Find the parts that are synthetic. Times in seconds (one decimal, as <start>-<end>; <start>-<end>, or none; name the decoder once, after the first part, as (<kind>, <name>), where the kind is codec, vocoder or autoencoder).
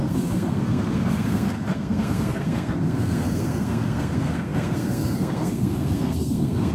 0.0-6.7 (codec, SNAC)